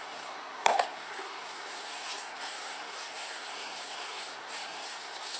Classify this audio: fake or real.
fake